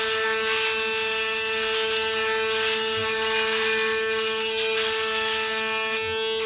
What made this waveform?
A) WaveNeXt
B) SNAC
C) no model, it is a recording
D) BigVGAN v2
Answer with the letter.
C